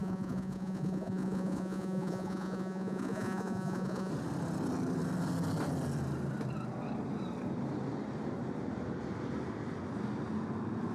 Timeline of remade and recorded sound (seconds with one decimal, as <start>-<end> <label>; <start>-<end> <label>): 0.0-4.1 remade; 4.1-10.9 recorded